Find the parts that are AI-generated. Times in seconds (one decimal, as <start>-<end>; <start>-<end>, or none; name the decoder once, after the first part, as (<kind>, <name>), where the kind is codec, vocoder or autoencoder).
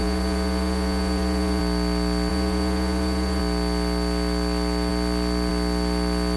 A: 0.0-1.6 (vocoder, Vocos); 2.3-3.4